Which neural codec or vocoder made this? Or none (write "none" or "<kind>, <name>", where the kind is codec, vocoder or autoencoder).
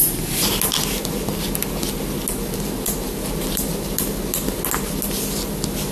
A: none